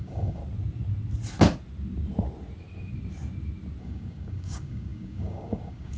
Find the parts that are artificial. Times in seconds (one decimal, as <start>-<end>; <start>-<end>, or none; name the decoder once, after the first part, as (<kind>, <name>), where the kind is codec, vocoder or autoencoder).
0.0-0.4 (codec, DAC); 3.8-6.0

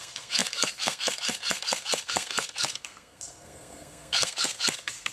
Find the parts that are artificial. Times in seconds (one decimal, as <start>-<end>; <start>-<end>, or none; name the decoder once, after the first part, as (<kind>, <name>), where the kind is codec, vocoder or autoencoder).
0.0-5.1 (codec, SNAC)

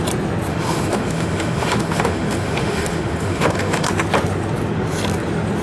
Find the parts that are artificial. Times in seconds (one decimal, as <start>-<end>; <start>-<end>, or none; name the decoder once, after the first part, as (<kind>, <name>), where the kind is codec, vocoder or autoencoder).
0.5-3.9 (autoencoder, DAC-VAE)

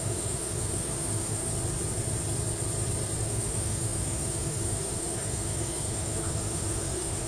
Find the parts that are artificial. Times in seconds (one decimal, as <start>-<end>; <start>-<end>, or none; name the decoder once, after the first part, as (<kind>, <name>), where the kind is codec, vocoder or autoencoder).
0.0-1.5 (autoencoder, DAC-VAE); 3.2-7.3

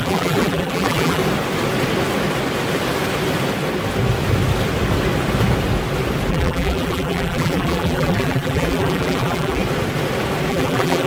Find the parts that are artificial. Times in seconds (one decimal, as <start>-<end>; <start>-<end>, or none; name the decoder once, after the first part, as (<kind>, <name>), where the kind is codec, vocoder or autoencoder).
0.0-1.2 (vocoder, BigVGAN v2); 6.3-9.6; 10.5-11.1

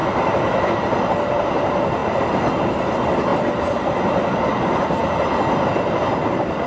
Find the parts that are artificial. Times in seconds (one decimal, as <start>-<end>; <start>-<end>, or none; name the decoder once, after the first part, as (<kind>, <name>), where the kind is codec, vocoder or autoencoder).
none

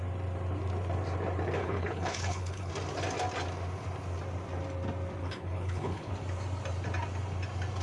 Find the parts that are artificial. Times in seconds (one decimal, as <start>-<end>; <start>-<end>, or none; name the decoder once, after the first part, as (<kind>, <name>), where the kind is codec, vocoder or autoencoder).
1.6-2.7 (codec, HILCodec); 5.2-6.1

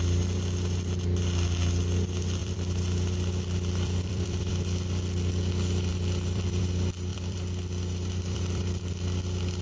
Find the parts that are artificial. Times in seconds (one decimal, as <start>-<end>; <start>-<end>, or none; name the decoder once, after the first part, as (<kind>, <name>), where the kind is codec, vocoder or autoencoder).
2.4-4.5 (vocoder, BigVGAN v2); 5.9-6.6; 7.1-8.8